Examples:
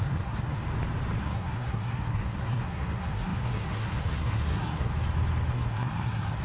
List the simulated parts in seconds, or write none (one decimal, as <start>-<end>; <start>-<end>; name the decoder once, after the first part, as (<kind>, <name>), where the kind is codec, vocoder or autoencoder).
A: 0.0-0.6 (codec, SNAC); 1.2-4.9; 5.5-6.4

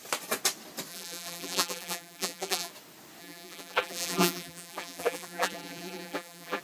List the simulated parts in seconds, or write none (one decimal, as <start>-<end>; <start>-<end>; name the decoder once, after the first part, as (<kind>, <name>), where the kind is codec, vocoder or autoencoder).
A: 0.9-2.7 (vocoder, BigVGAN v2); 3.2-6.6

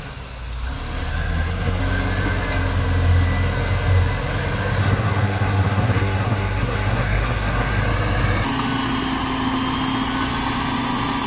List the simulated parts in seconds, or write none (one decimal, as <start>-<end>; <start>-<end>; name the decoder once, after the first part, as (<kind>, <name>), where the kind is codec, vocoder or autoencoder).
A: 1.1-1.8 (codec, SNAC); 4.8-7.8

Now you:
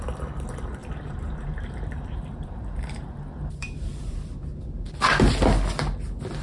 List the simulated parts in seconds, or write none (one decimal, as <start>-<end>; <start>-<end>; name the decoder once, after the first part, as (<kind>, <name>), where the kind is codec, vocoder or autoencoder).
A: 0.8-4.6 (vocoder, BigVGAN v2)

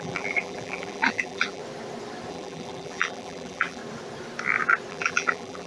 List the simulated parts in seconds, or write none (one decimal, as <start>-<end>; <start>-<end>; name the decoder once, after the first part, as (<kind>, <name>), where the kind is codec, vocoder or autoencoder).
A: 0.0-1.6 (vocoder, BigVGAN v2); 2.3-3.8; 4.9-5.7

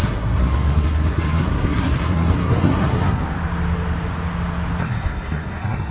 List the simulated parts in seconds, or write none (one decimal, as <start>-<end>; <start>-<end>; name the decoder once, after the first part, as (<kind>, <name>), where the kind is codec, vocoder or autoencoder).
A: 0.0-3.2 (codec, SNAC); 4.8-5.9